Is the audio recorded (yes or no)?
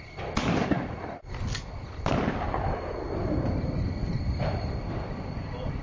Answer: yes